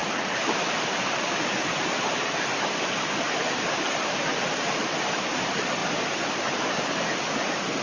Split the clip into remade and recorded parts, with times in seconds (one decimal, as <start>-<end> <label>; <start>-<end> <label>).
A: 0.0-7.8 recorded

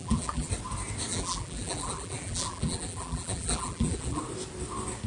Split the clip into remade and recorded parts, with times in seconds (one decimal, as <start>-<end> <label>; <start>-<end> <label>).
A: 0.0-0.5 remade; 0.5-1.1 recorded; 1.1-4.2 remade; 4.2-5.1 recorded

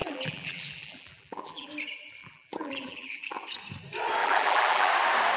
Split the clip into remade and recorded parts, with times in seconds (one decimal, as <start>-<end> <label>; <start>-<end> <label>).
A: 0.0-1.7 remade; 1.7-2.2 recorded; 2.2-3.4 remade; 3.4-4.2 recorded; 4.2-4.9 remade; 4.9-5.4 recorded

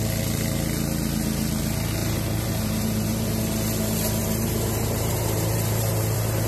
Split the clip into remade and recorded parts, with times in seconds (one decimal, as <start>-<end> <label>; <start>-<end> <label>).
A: 0.0-2.0 recorded; 2.0-3.4 remade; 3.4-4.2 recorded; 4.2-6.5 remade

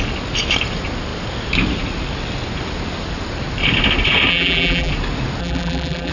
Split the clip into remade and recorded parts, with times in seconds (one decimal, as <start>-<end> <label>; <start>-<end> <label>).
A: 0.0-4.3 recorded; 4.3-4.9 remade; 4.9-5.4 recorded; 5.4-6.1 remade

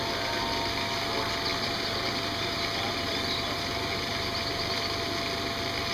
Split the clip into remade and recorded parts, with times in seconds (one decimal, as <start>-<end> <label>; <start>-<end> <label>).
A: 0.0-1.5 recorded; 1.5-4.6 remade; 4.6-5.9 recorded

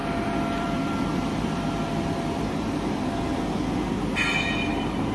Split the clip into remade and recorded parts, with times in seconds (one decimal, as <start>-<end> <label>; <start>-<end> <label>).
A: 0.0-3.1 remade; 3.1-5.1 recorded